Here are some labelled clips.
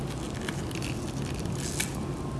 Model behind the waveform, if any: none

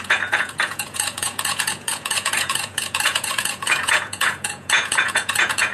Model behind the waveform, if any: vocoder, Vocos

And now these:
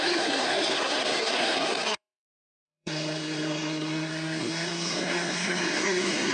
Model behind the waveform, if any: codec, SNAC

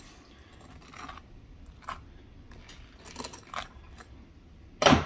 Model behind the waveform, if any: none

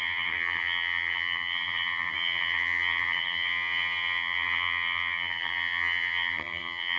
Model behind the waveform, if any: vocoder, HiFi-GAN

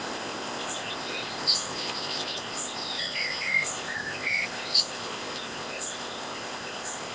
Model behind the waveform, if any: codec, ZipCodec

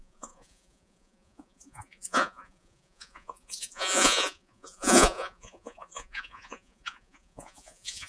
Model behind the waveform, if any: vocoder, Vocos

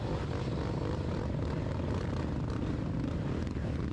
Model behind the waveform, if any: none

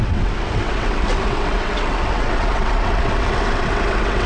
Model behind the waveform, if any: vocoder, WaveNeXt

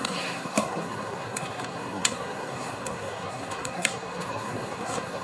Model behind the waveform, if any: codec, SNAC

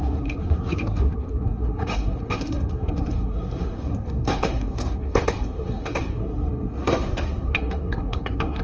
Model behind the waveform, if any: codec, SNAC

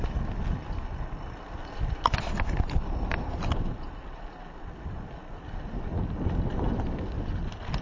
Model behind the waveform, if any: none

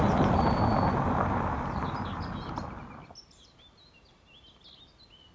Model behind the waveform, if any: none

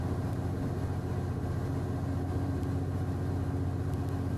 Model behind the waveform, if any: none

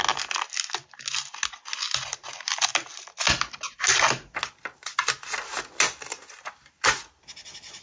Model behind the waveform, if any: none